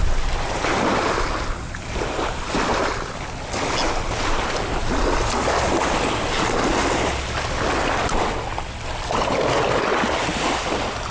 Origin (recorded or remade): recorded